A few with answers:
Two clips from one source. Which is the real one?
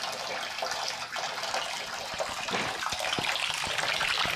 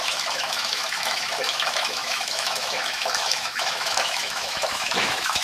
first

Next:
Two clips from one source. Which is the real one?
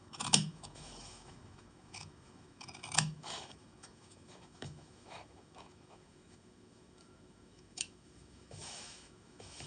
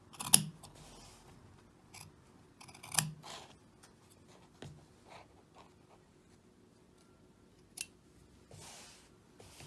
second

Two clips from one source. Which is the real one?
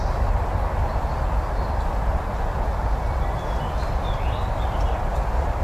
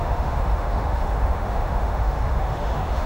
first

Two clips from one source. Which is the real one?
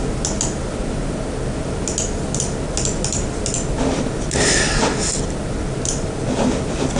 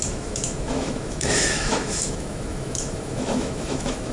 first